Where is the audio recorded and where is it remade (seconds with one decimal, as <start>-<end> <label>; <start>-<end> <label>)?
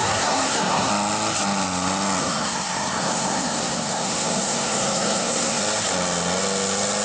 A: 0.0-0.9 remade; 0.9-2.2 recorded; 2.2-5.6 remade; 5.6-7.0 recorded